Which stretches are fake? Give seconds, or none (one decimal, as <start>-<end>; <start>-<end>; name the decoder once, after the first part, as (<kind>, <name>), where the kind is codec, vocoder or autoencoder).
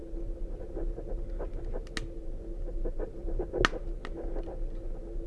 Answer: none